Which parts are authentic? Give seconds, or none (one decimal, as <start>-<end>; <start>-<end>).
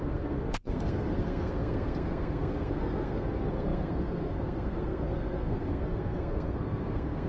none